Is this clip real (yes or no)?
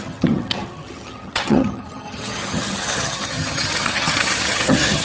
no